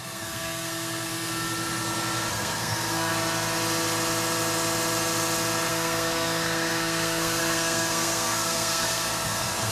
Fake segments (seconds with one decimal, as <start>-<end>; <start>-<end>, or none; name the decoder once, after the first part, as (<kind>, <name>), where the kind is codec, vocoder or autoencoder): 0.0-1.1 (codec, SNAC); 2.3-3.1; 5.7-9.7